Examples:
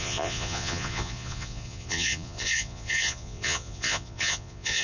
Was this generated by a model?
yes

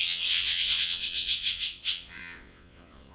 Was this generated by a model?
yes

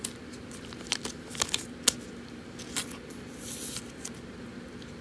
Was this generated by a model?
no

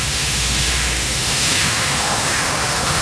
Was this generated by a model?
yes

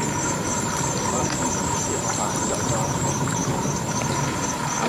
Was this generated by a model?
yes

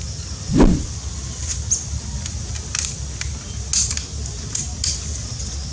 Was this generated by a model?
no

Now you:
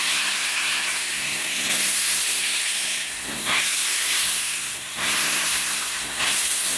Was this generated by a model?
yes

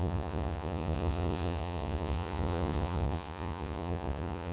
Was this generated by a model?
yes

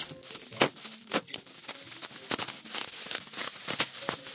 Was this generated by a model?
no